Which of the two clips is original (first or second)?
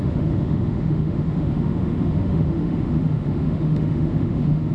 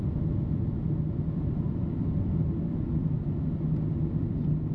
second